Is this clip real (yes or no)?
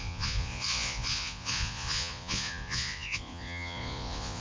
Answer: no